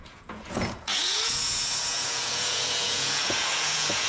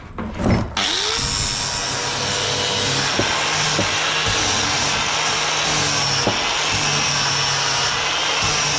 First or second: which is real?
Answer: second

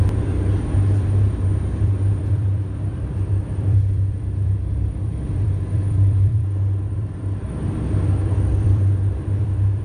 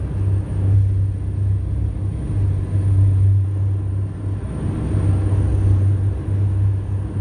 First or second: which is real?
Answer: second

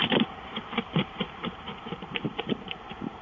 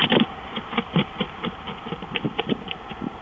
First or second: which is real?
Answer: second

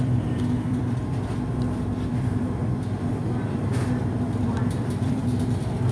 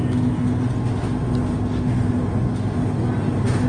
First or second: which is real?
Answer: second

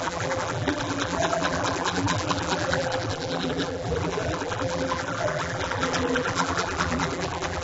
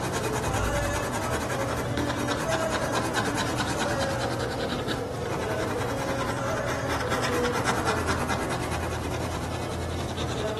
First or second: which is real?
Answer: second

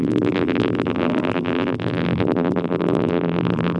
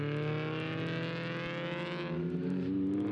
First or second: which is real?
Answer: second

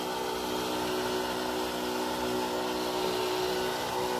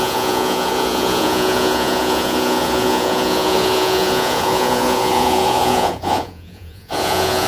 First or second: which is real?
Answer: first